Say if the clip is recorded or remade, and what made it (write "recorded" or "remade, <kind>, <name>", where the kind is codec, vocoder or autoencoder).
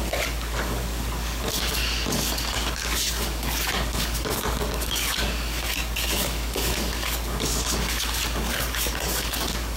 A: remade, codec, DAC